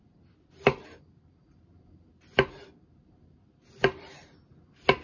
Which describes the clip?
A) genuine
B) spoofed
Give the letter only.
A